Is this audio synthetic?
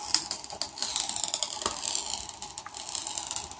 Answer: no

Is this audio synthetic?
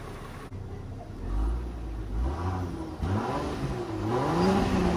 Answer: no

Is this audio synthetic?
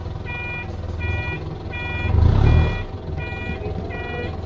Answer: no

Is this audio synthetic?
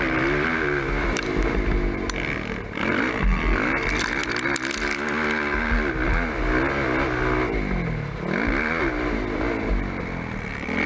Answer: no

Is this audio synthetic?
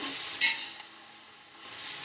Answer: no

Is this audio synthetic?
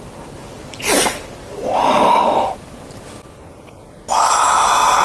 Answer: no